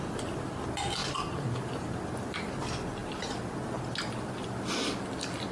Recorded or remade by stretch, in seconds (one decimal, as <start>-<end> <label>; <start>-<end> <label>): 0.0-1.0 recorded; 1.0-2.0 remade; 2.0-3.0 recorded; 3.0-3.5 remade; 3.5-5.5 recorded

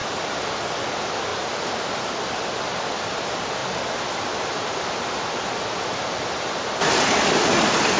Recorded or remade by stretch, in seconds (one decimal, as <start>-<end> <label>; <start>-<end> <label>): 0.0-1.3 recorded; 1.3-1.9 remade; 1.9-3.6 recorded; 3.6-7.6 remade; 7.6-8.0 recorded

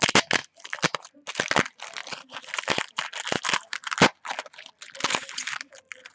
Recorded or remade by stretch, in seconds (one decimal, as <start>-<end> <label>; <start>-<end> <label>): 0.0-0.4 recorded; 0.4-1.1 remade; 1.1-6.1 recorded

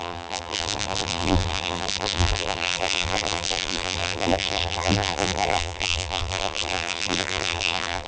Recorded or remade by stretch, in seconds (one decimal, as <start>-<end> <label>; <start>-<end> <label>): 0.0-8.1 remade